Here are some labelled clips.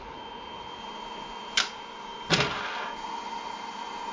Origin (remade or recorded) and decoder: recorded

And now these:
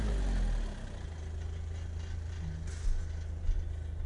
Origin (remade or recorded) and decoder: recorded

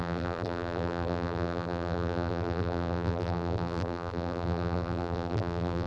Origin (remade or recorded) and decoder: remade, vocoder, BigVGAN v2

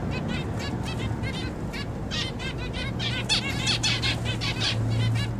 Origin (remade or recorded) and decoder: recorded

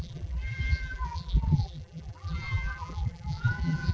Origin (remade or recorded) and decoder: remade, vocoder, BigVGAN v2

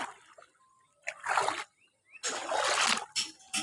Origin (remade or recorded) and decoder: recorded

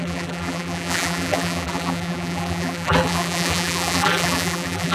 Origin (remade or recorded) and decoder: remade, vocoder, BigVGAN v2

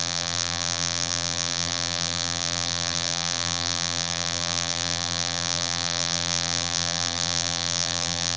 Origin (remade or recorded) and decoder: remade, vocoder, BigVGAN v2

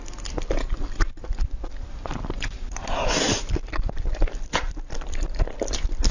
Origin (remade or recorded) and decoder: remade, vocoder, BigVGAN v2